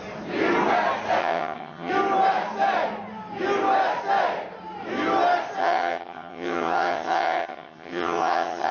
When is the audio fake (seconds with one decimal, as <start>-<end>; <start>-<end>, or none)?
1.2-1.9; 5.6-8.7